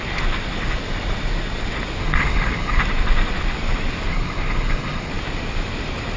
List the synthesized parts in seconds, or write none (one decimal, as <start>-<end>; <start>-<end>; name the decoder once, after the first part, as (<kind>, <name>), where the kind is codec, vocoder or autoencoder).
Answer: 2.0-2.8 (codec, HILCodec); 4.1-5.1